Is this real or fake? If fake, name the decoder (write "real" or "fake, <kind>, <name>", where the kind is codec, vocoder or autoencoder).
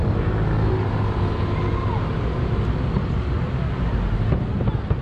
real